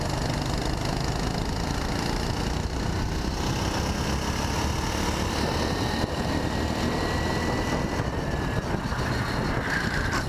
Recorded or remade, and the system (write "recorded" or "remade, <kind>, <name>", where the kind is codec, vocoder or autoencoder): recorded